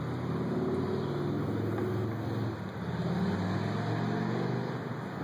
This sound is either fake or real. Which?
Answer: real